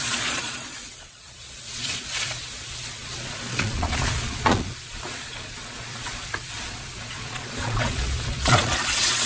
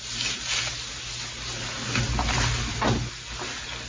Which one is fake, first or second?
first